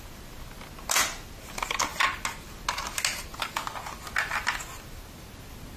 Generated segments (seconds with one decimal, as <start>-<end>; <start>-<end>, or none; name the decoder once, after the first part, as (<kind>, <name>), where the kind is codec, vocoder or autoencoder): none